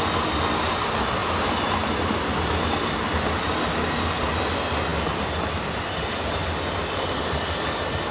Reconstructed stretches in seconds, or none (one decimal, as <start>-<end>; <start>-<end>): none